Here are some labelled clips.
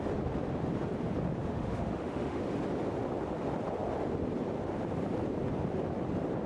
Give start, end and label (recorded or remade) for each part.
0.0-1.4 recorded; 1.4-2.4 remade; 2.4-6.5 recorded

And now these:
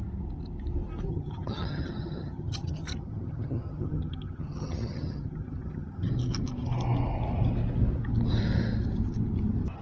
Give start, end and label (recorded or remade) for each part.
0.0-1.1 recorded; 1.1-6.1 remade; 6.1-9.8 recorded

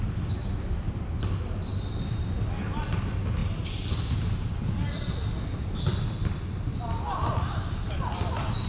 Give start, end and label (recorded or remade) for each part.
0.0-8.7 recorded